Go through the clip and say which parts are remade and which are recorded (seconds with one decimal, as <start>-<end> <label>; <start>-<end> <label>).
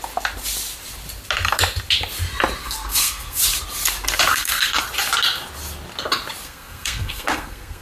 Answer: 0.0-2.6 recorded; 2.6-3.4 remade; 3.4-4.3 recorded; 4.3-4.8 remade; 4.8-6.4 recorded; 6.4-7.8 remade